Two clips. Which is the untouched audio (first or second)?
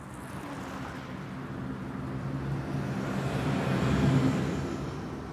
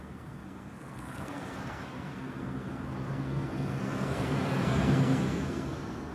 first